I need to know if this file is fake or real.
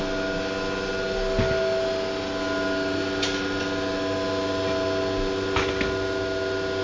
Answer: real